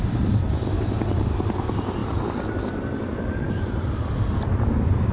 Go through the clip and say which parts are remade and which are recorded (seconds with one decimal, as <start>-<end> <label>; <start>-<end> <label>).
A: 0.0-2.0 recorded; 2.0-3.9 remade; 3.9-5.1 recorded